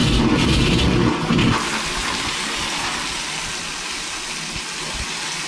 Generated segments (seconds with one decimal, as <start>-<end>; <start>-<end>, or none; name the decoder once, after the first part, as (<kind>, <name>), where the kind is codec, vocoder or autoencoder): 0.0-0.8 (vocoder, BigVGAN v2)